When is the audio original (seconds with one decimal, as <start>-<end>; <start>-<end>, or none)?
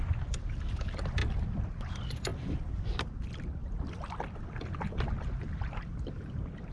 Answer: none